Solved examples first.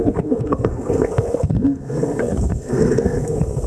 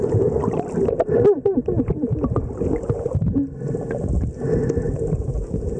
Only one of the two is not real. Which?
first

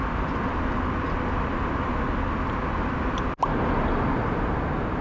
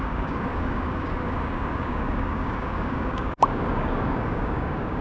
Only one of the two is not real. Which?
second